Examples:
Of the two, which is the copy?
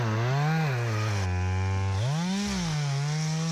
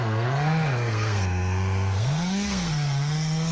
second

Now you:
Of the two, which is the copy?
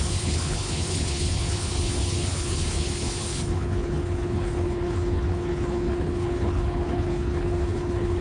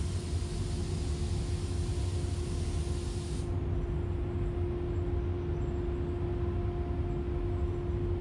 first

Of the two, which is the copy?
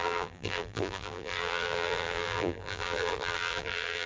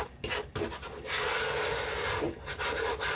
first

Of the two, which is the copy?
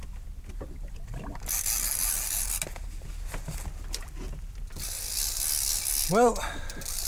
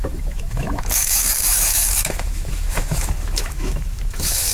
second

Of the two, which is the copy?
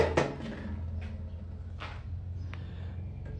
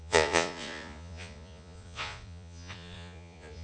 second